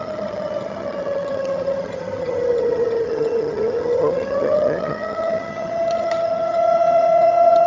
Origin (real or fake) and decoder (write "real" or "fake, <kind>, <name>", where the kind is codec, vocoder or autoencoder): fake, vocoder, HiFi-GAN